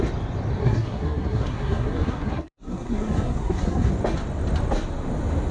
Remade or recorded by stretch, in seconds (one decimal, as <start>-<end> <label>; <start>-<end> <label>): 0.0-0.6 recorded; 0.6-3.9 remade; 3.9-5.5 recorded